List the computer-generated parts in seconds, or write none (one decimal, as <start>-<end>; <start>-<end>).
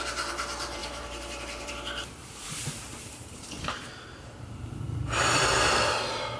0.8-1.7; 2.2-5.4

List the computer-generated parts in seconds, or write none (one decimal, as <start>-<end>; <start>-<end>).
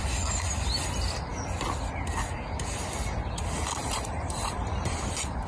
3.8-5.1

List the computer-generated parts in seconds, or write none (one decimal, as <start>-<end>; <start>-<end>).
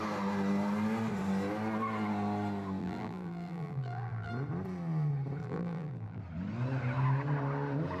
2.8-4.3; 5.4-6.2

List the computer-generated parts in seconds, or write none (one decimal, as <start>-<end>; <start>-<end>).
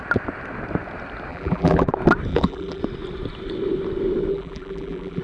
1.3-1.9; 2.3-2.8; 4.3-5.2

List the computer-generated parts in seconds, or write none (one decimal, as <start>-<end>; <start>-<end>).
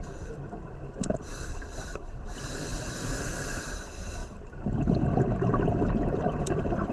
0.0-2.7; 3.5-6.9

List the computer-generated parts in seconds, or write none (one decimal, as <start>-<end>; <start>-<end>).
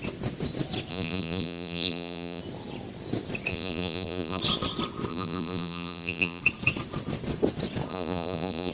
0.9-2.4; 3.5-4.4; 5.1-6.4; 7.9-8.7